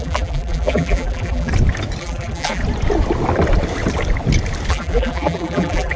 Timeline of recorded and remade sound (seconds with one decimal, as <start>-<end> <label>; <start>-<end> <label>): 0.0-1.5 remade; 1.5-2.0 recorded; 2.0-2.6 remade; 2.6-4.7 recorded; 4.7-6.0 remade